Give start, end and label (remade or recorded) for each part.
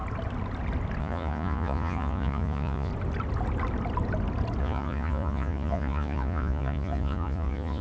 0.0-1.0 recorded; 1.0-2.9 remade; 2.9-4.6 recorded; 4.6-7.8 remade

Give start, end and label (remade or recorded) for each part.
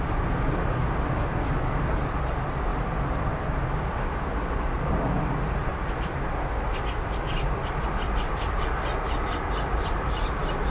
0.0-10.7 recorded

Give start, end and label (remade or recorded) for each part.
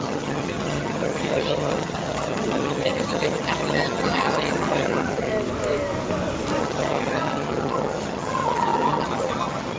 0.0-5.3 remade; 5.3-6.6 recorded; 6.6-9.8 remade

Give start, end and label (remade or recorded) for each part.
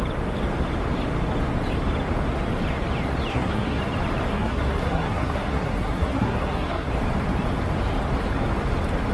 0.0-3.3 recorded; 3.3-3.8 remade; 3.8-4.3 recorded; 4.3-6.9 remade; 6.9-9.1 recorded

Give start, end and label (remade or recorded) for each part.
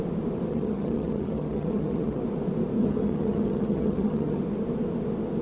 0.0-0.5 recorded; 0.5-2.2 remade; 2.2-2.8 recorded; 2.8-4.4 remade; 4.4-5.4 recorded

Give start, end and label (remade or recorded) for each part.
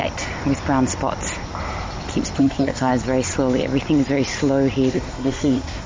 0.0-2.4 recorded; 2.4-2.9 remade; 2.9-4.9 recorded; 4.9-5.9 remade